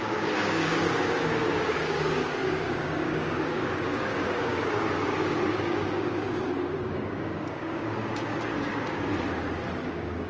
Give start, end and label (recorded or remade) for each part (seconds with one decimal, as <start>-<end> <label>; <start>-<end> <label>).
0.0-9.1 remade; 9.1-9.9 recorded; 9.9-10.3 remade